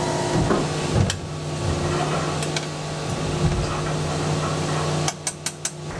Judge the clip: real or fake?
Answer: real